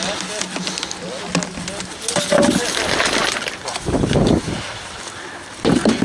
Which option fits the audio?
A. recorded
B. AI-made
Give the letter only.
A